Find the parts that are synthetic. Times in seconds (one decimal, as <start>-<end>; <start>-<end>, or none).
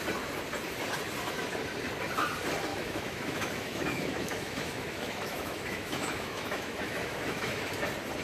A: 2.7-7.6